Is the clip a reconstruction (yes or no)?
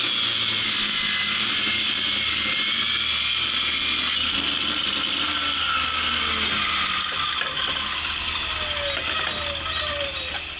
no